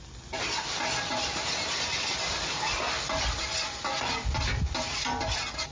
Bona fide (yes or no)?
yes